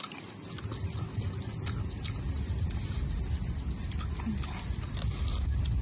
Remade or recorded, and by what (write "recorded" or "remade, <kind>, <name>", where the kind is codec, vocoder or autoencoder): recorded